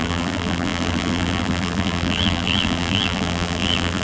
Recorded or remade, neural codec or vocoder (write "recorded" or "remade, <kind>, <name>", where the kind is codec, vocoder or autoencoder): remade, vocoder, BigVGAN v2